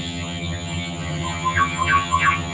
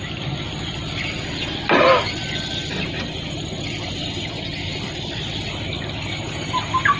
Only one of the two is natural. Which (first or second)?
second